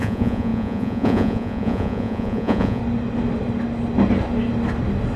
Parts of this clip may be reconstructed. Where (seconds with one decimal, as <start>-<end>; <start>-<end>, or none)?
0.0-2.8